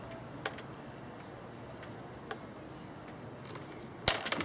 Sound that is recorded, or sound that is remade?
recorded